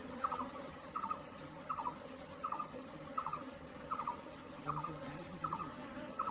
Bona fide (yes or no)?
no